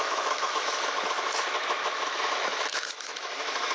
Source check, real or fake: fake